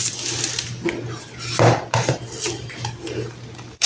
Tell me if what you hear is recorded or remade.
remade